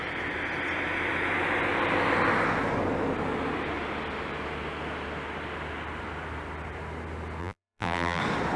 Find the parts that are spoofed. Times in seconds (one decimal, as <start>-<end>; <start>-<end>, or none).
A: 7.4-8.2